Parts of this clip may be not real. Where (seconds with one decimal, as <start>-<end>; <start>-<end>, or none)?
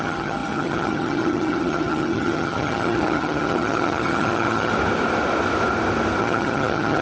0.0-4.7; 6.2-7.0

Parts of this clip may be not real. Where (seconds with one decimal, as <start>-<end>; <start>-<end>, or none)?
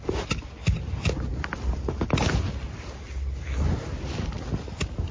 none